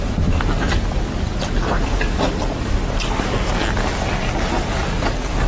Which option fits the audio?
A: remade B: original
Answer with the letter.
B